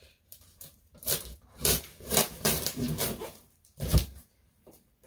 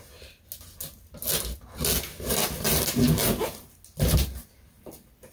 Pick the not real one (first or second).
first